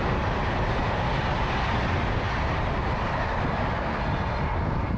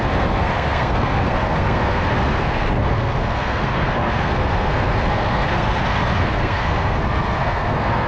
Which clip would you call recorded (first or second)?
first